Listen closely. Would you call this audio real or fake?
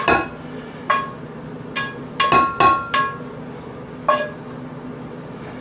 real